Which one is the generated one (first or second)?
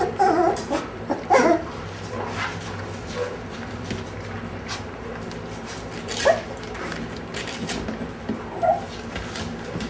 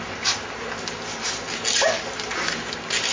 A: first